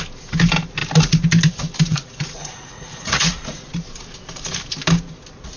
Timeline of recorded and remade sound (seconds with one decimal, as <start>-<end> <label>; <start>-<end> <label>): 0.0-1.9 recorded; 1.9-3.7 remade; 3.7-5.6 recorded